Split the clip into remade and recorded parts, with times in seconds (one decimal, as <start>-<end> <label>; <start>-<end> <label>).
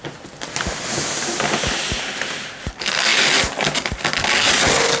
0.0-5.0 recorded